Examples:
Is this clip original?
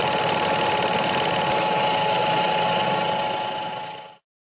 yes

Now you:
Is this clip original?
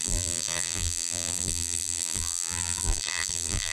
no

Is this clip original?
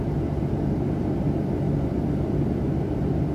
yes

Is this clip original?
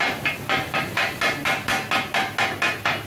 yes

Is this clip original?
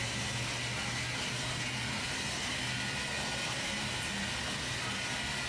yes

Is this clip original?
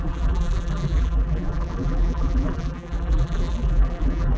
no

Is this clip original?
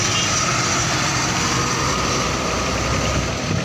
no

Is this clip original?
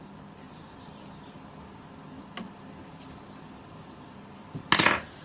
yes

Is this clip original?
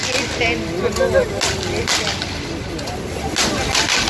yes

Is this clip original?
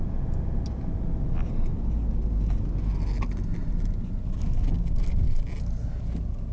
yes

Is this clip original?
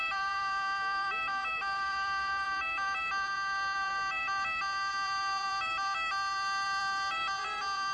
no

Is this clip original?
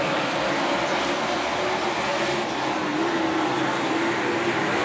yes